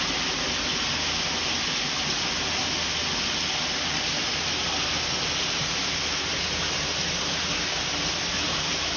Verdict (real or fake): real